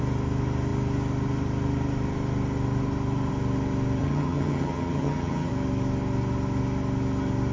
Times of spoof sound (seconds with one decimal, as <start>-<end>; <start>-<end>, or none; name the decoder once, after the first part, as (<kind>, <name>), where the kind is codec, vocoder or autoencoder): 4.0-5.5 (vocoder, HiFi-GAN)